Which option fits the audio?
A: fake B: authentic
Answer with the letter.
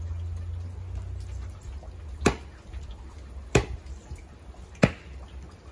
B